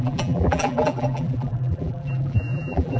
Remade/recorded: remade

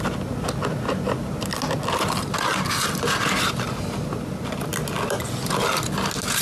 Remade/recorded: recorded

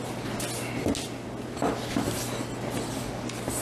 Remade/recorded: recorded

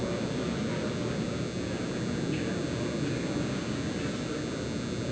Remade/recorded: recorded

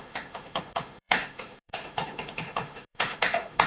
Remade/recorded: remade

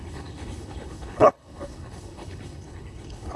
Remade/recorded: remade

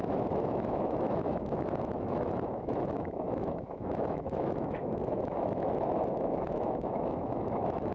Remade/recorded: remade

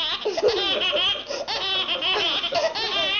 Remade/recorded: recorded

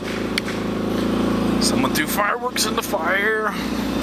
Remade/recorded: recorded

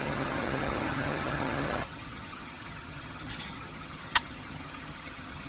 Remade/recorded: remade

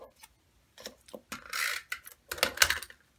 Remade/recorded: recorded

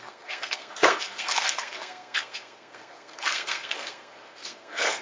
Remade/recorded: remade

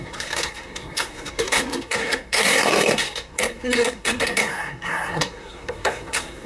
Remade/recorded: remade